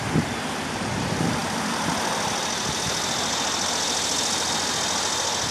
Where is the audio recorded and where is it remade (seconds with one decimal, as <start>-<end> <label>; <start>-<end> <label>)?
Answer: 0.0-5.5 recorded